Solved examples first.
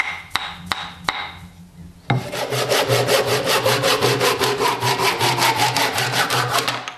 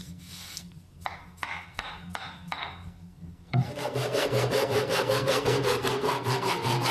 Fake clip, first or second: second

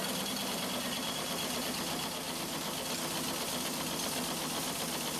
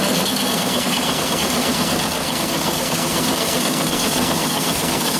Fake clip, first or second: second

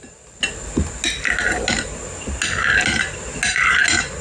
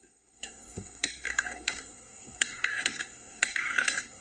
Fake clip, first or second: second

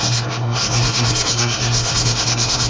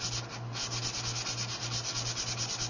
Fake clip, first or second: first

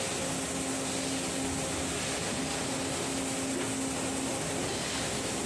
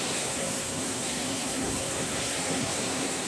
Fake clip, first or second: second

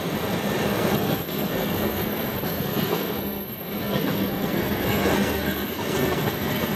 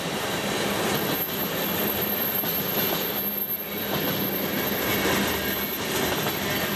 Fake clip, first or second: first